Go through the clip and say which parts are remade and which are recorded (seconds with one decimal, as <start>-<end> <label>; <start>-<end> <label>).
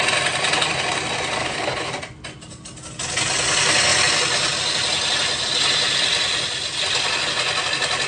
0.0-1.4 recorded; 1.4-1.9 remade; 1.9-8.1 recorded